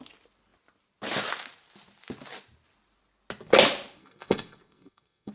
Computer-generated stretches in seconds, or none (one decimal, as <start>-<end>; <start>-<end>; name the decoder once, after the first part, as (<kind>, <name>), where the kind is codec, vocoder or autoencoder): 4.0-5.3 (codec, SNAC)